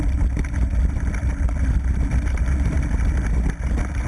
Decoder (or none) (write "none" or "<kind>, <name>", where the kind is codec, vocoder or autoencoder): none